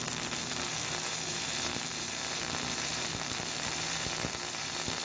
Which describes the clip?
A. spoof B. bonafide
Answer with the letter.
A